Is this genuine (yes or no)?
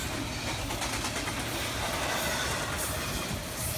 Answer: yes